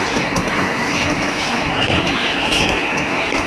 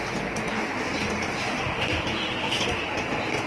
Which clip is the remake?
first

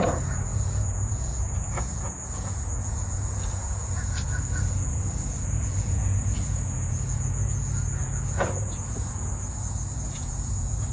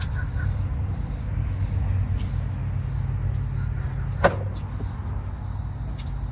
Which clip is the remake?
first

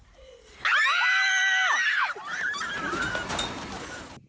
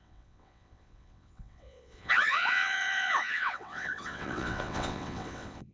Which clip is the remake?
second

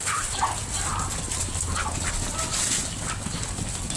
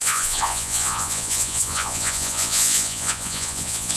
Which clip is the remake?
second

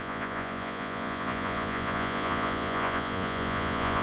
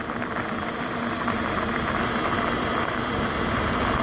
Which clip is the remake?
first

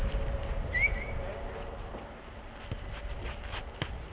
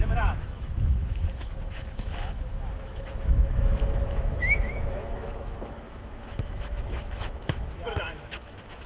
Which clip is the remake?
second